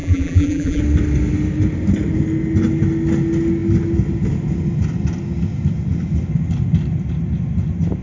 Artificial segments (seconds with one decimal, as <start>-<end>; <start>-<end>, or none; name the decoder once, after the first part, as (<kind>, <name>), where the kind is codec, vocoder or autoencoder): 0.0-0.8 (vocoder, BigVGAN v2)

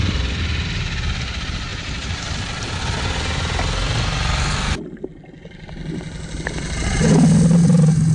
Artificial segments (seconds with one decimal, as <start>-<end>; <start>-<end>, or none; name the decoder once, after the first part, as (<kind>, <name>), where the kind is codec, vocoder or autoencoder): 1.7-2.7 (vocoder, BigVGAN v2); 5.1-6.3

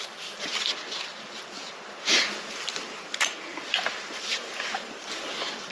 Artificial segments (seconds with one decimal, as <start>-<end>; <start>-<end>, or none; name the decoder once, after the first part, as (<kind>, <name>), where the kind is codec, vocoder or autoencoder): 0.0-0.5 (vocoder, BigVGAN v2); 3.3-5.7